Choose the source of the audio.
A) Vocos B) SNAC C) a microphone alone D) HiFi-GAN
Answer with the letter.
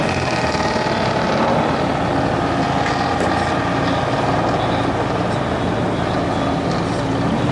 C